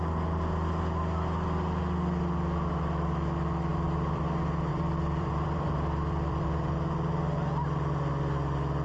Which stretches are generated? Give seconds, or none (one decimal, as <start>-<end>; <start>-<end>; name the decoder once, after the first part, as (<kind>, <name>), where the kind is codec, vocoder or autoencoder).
3.7-4.2 (vocoder, BigVGAN v2); 4.7-6.7